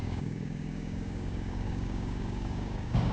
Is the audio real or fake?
fake